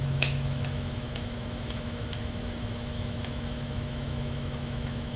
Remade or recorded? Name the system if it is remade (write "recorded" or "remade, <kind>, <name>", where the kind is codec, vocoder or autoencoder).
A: remade, autoencoder, DAC-VAE